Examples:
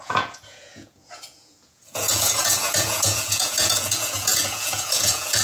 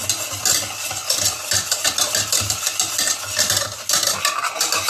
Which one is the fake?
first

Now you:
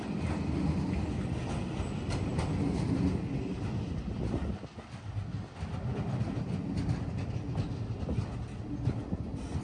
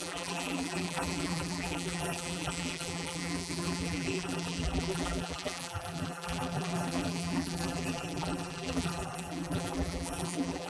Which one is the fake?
second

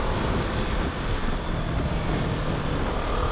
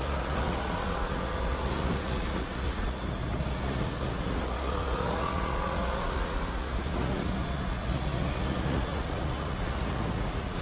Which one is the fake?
second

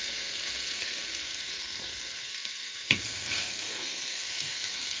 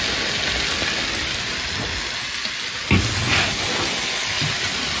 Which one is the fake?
first